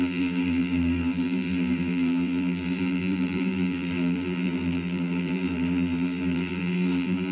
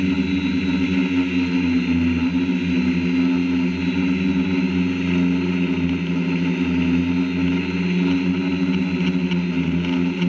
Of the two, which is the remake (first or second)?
first